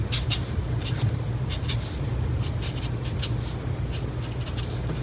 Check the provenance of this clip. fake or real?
real